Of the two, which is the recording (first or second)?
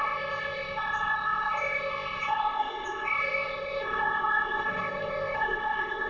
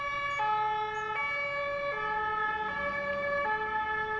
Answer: second